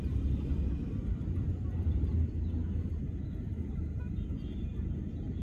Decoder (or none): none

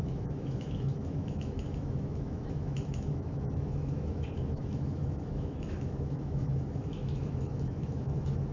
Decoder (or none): autoencoder, DAC-VAE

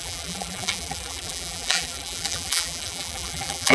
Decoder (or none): vocoder, BigVGAN v2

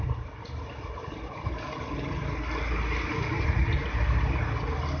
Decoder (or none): none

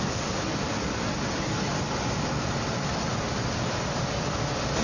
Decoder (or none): none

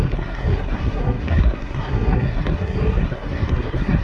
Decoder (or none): codec, SNAC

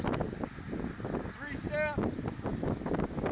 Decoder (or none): none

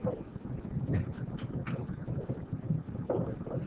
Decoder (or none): none